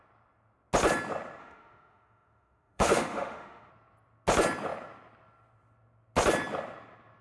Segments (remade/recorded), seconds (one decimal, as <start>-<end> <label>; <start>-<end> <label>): 0.0-1.4 recorded; 1.4-3.7 remade; 3.7-7.2 recorded